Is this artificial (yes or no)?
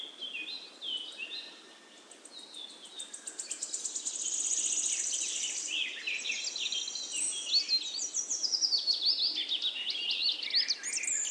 no